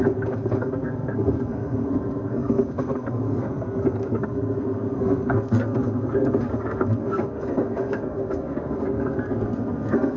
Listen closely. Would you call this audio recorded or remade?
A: remade